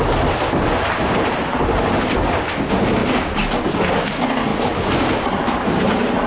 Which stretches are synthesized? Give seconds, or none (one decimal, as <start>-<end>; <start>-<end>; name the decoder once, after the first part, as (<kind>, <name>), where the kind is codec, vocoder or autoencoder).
1.0-1.8 (vocoder, BigVGAN v2); 4.5-6.3